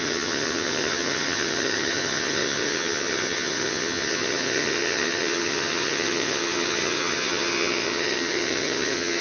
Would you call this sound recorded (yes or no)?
no